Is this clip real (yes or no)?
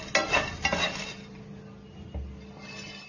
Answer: yes